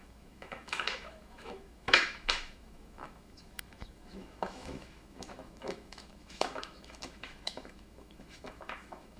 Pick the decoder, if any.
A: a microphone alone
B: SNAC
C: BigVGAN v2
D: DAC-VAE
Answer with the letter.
D